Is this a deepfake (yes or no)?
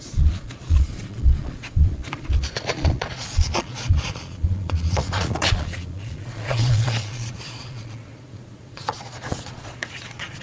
yes